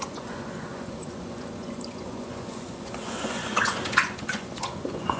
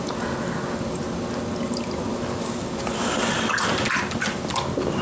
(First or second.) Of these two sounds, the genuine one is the second